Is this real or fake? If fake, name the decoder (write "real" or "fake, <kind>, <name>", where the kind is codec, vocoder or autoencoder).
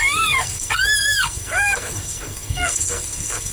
fake, codec, SNAC